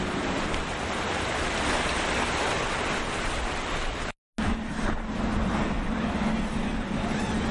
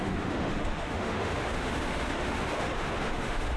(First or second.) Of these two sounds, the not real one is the second